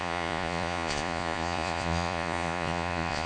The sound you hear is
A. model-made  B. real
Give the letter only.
A